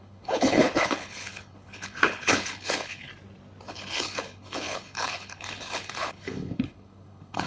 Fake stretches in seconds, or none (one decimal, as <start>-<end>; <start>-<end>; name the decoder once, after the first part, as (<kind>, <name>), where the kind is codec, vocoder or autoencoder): 0.0-3.1 (codec, HILCodec); 3.7-7.5